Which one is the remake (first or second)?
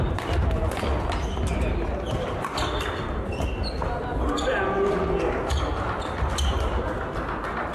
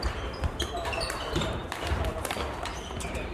second